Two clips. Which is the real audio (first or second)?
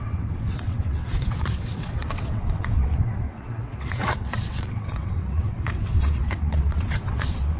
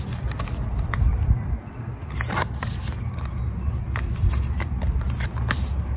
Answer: second